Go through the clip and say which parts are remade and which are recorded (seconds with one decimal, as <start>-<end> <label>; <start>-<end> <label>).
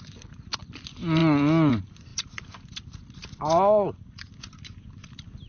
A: 0.0-5.5 recorded